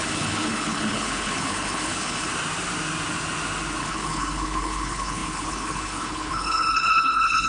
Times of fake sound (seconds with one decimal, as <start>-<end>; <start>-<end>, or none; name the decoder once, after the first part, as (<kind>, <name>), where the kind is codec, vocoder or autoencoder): 0.0-2.3 (codec, HILCodec); 3.8-7.5